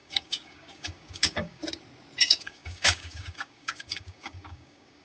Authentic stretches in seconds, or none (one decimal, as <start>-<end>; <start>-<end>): 1.6-2.2